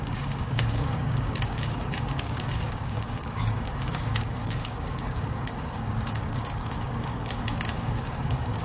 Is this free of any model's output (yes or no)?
no